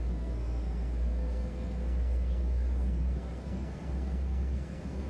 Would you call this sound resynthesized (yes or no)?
yes